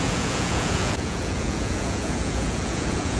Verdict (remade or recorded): remade